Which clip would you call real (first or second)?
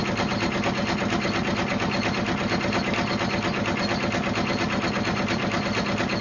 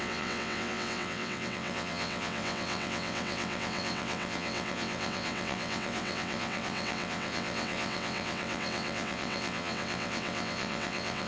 first